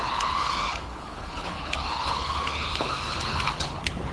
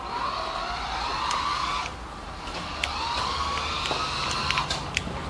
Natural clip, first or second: second